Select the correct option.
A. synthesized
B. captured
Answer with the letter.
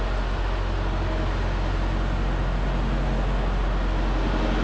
B